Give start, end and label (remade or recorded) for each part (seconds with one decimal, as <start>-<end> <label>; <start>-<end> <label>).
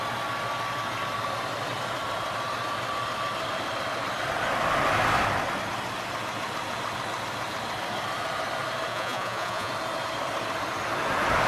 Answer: 0.0-8.9 recorded; 8.9-9.7 remade; 9.7-11.5 recorded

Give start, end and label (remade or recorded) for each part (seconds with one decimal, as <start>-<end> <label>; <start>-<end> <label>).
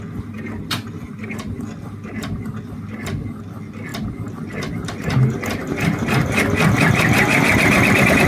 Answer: 0.0-8.3 recorded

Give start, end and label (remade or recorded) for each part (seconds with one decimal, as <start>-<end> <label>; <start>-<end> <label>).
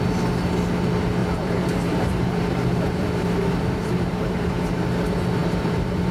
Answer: 0.0-1.2 recorded; 1.2-4.5 remade; 4.5-5.4 recorded; 5.4-6.1 remade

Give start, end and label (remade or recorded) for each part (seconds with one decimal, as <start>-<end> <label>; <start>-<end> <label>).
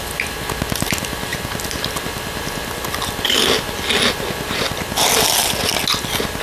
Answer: 0.0-6.4 recorded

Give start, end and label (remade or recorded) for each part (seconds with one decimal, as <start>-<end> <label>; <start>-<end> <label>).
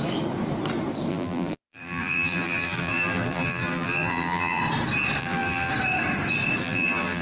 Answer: 0.0-1.1 recorded; 1.1-4.6 remade; 4.6-5.2 recorded; 5.2-5.7 remade; 5.7-6.6 recorded; 6.6-7.2 remade